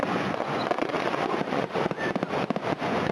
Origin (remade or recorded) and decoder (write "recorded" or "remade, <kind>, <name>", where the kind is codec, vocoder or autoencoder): remade, vocoder, Vocos